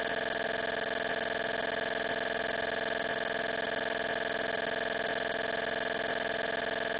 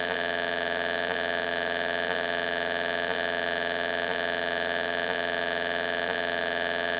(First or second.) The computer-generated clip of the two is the second